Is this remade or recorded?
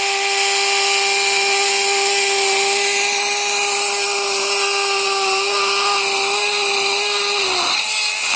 recorded